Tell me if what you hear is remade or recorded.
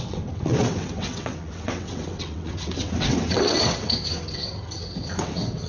remade